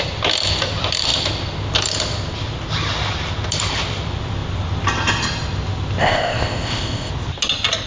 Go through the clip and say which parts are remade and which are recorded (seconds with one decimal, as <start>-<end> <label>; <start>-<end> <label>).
0.0-6.0 recorded; 6.0-7.1 remade; 7.1-7.9 recorded